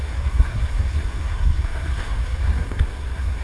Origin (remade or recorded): remade